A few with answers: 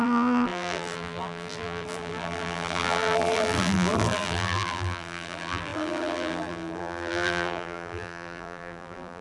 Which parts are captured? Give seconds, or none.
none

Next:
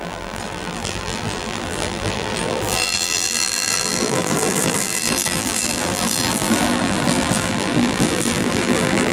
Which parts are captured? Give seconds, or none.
none

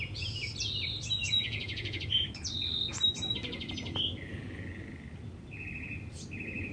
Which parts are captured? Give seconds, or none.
0.0-1.2; 2.0-6.7

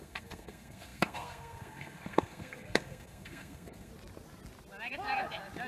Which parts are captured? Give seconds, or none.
3.9-5.7